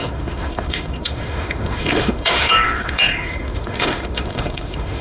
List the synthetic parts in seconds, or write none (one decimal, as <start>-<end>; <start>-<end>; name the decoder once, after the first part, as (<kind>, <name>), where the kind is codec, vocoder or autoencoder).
0.0-5.0 (autoencoder, DAC-VAE)